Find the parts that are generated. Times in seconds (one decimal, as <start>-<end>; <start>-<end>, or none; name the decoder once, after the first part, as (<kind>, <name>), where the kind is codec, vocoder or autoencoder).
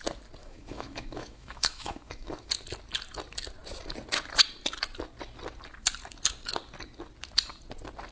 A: 0.4-2.5 (autoencoder, DAC-VAE)